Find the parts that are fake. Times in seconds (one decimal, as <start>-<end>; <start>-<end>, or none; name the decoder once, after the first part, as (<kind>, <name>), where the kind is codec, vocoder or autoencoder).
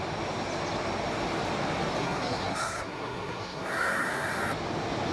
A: 2.0-4.4 (codec, SNAC)